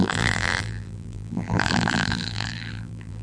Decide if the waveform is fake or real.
fake